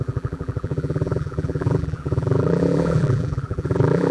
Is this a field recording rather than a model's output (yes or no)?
no